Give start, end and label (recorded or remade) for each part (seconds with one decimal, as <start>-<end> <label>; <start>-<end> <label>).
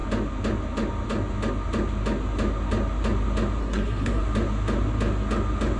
0.0-3.6 recorded; 3.6-4.2 remade; 4.2-5.8 recorded